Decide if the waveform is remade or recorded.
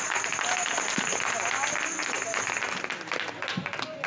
recorded